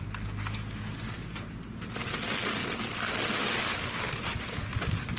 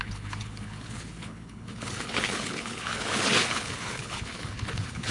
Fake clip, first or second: second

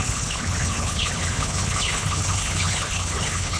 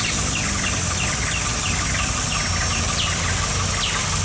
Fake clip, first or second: first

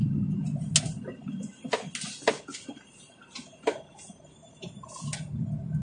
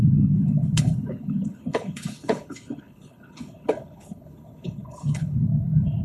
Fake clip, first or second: second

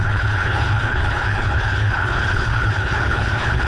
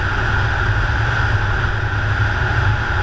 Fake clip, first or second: first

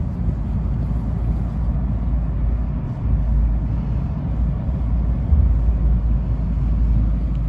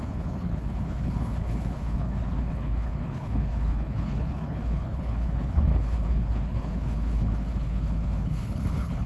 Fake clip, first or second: second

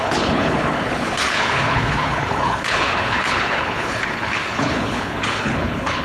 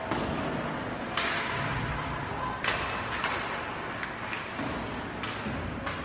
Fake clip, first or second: first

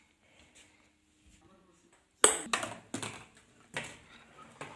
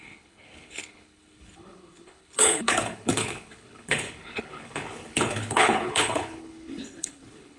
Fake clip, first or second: second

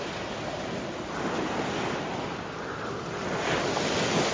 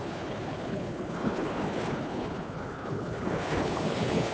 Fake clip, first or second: second